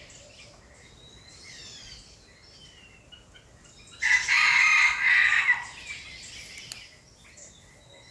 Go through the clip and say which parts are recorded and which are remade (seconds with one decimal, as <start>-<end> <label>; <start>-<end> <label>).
0.0-8.1 recorded